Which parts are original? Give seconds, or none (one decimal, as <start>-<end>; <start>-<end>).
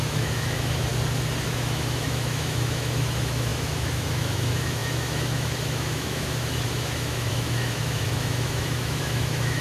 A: 0.9-1.5